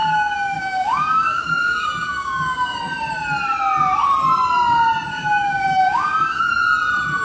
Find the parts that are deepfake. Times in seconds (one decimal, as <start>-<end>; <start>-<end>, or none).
0.0-2.8; 5.1-6.5